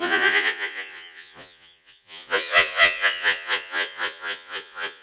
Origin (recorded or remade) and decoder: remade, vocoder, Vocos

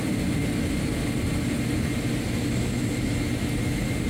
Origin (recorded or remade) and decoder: recorded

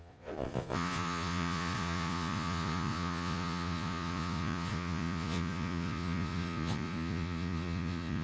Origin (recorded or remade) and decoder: remade, vocoder, Vocos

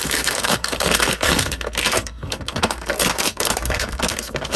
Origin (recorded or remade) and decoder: remade, codec, SNAC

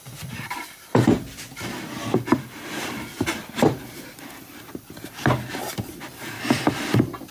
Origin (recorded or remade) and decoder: remade, vocoder, BigVGAN v2